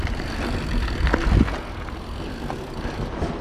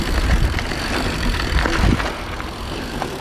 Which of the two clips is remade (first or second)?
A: second